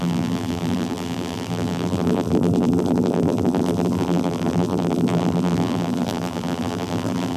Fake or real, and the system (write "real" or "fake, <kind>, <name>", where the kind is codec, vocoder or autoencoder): fake, vocoder, BigVGAN v2